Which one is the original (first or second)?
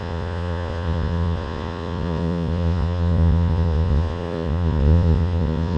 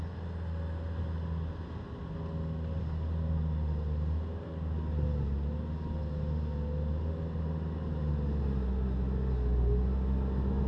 second